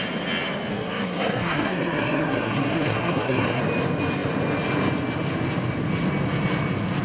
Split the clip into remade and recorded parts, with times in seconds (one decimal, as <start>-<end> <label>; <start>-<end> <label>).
0.0-0.7 recorded; 0.7-3.6 remade; 3.6-7.0 recorded